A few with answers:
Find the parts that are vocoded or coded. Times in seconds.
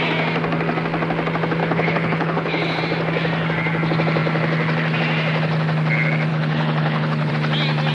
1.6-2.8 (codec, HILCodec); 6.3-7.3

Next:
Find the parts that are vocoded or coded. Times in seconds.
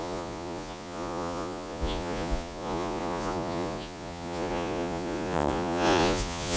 0.0-6.6 (vocoder, Vocos)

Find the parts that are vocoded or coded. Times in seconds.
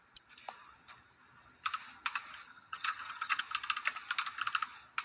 2.5-3.4 (vocoder, HiFi-GAN)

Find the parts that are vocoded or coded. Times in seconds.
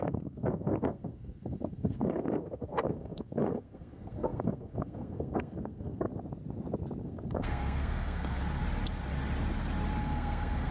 0.0-6.1 (codec, SNAC); 7.0-8.6; 10.0-10.7